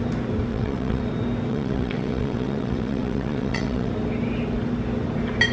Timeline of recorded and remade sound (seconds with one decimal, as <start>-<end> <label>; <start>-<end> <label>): 0.0-0.5 recorded; 0.5-1.0 remade; 1.0-1.5 recorded; 1.5-3.9 remade; 3.9-5.5 recorded